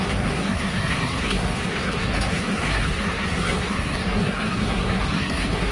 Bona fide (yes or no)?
no